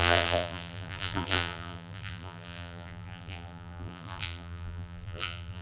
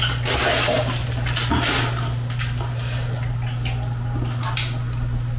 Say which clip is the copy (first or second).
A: first